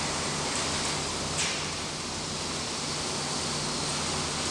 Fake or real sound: real